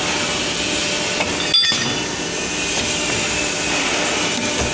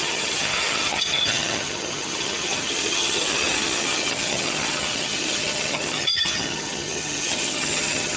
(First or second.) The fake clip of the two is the second